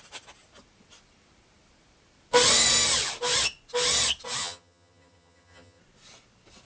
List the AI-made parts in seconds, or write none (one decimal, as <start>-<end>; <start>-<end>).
4.4-5.8